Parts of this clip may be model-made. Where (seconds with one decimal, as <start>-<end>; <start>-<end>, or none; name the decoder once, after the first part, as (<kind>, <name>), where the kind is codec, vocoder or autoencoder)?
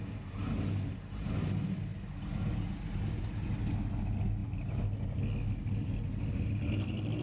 none